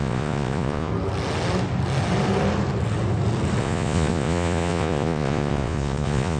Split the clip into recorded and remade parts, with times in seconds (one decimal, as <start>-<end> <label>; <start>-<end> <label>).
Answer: 0.0-0.9 remade; 0.9-3.6 recorded; 3.6-6.4 remade